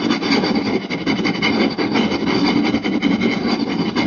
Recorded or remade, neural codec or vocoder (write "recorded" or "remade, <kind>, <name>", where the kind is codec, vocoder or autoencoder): remade, vocoder, BigVGAN v2